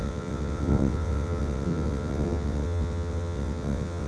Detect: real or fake fake